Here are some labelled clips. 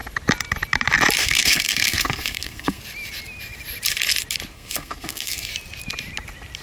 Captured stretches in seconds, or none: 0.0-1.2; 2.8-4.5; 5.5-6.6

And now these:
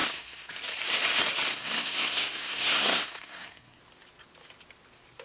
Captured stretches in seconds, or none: 0.5-1.5; 3.8-5.2

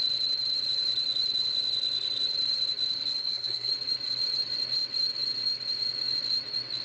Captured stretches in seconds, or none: 0.0-3.2; 3.7-6.8

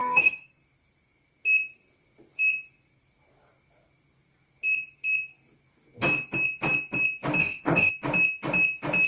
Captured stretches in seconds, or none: 0.6-7.4; 7.9-9.1